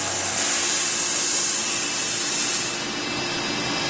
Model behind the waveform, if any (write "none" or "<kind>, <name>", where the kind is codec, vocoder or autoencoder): none